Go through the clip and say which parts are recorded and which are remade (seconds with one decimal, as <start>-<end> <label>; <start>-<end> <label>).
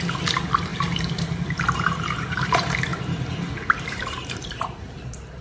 0.0-0.7 recorded; 0.7-2.5 remade; 2.5-2.9 recorded; 2.9-5.0 remade; 5.0-5.4 recorded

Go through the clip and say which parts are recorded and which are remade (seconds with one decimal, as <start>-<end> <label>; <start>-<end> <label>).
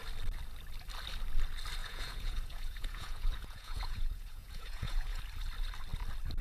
0.0-1.8 recorded; 1.8-5.2 remade; 5.2-6.4 recorded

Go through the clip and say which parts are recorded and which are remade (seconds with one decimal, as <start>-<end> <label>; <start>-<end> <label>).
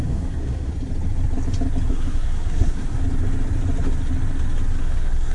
0.0-0.7 remade; 0.7-1.9 recorded; 1.9-3.0 remade; 3.0-4.8 recorded; 4.8-5.3 remade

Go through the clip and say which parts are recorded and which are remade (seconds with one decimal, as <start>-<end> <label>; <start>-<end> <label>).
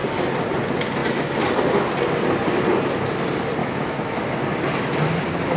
0.0-3.6 recorded; 3.6-4.2 remade; 4.2-5.6 recorded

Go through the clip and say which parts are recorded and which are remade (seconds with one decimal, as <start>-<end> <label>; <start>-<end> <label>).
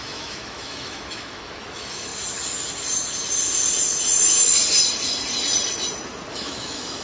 0.0-2.1 remade; 2.1-6.3 recorded; 6.3-7.0 remade